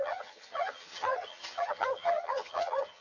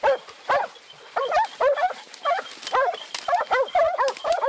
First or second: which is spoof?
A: first